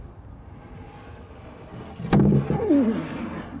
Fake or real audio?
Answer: real